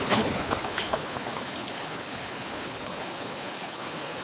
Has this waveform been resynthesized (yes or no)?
yes